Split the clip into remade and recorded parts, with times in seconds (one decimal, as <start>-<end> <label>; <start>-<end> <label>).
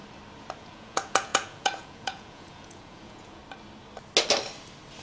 0.0-0.6 recorded; 0.6-3.4 remade; 3.4-5.0 recorded